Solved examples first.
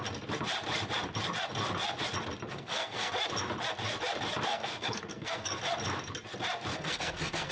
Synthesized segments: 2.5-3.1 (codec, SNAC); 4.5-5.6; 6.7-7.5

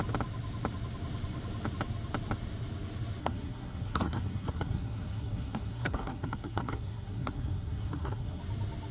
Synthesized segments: 3.2-8.4 (codec, SNAC)

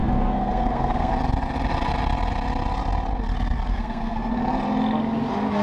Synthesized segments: 0.0-1.1 (codec, SNAC); 3.7-4.3